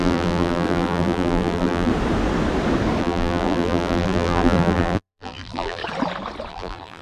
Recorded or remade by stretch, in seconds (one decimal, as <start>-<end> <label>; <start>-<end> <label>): 0.0-1.9 remade; 1.9-3.0 recorded; 3.0-5.8 remade; 5.8-6.5 recorded; 6.5-7.0 remade